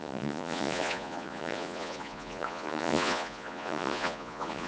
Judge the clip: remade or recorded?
remade